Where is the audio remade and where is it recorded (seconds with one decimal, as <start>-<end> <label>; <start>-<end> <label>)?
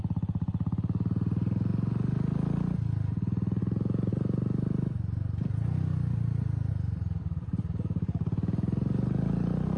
0.0-9.8 recorded